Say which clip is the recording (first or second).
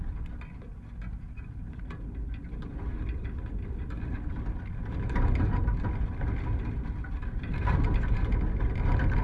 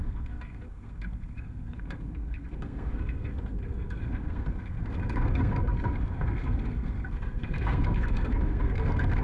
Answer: first